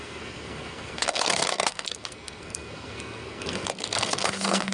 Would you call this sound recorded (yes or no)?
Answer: no